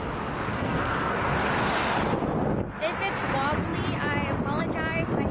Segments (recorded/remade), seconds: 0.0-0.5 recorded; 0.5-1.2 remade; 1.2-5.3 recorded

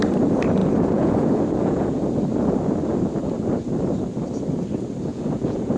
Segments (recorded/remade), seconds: 0.0-0.6 recorded; 0.6-2.0 remade; 2.0-5.1 recorded; 5.1-5.8 remade

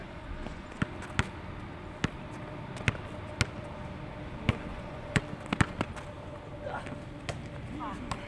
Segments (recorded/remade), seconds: 0.0-0.8 remade; 0.8-4.7 recorded; 4.7-5.2 remade; 5.2-8.3 recorded

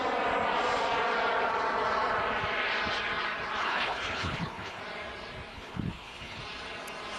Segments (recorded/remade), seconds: 0.0-3.6 recorded; 3.6-4.8 remade; 4.8-5.5 recorded; 5.5-6.4 remade; 6.4-7.2 recorded